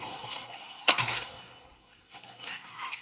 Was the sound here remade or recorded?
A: remade